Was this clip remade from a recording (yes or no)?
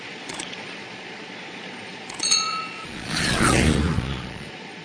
yes